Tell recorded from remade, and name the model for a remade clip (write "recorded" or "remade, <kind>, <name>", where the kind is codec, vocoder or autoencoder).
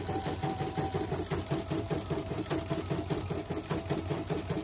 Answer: recorded